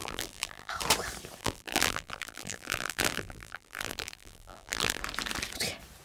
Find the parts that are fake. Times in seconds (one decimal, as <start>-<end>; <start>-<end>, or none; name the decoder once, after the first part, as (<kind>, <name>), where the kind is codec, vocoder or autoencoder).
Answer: 0.0-0.7 (vocoder, BigVGAN v2); 1.4-5.0